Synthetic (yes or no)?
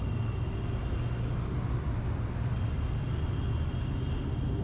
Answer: no